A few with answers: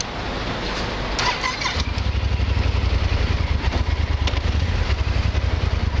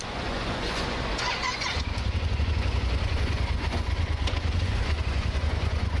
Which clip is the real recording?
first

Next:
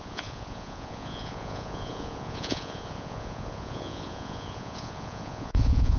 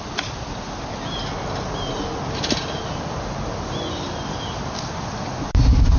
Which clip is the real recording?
second